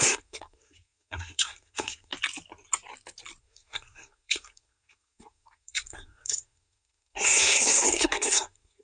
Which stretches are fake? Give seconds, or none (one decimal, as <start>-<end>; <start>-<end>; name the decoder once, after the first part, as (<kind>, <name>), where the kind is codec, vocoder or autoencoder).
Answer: 0.0-2.1 (codec, SNAC); 3.4-8.8